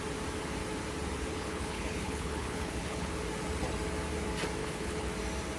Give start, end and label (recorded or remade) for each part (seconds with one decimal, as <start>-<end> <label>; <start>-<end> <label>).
0.0-1.3 recorded; 1.3-3.1 remade; 3.1-4.6 recorded; 4.6-5.1 remade; 5.1-5.6 recorded